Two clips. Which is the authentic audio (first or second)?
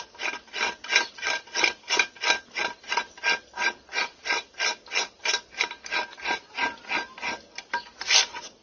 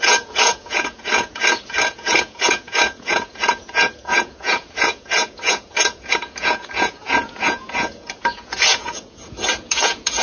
first